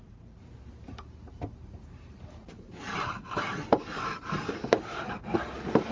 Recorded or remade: remade